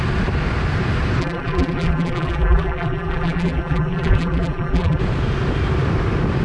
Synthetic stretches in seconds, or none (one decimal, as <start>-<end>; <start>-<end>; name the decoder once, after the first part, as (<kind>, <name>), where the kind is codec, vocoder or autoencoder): 1.2-5.0 (vocoder, BigVGAN v2)